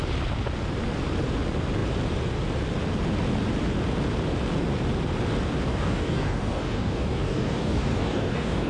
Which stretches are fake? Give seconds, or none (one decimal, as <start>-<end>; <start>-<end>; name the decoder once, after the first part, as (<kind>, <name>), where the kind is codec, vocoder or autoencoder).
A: 5.7-8.7 (codec, DAC)